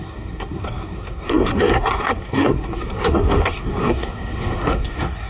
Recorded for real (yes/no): no